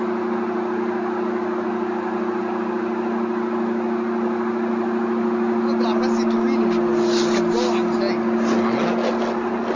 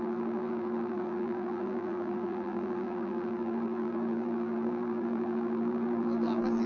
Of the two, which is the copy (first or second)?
second